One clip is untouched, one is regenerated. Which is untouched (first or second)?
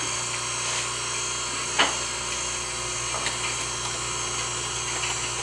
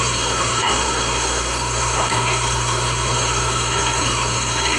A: first